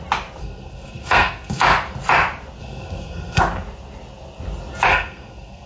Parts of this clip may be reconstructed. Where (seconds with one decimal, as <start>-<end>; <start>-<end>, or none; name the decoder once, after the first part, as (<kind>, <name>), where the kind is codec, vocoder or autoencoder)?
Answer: 0.4-1.6 (codec, SNAC); 2.6-3.4; 4.9-5.7